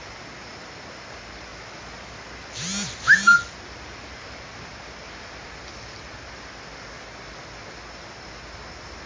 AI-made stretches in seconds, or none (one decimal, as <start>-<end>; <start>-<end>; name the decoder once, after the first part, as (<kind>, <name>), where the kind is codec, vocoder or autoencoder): none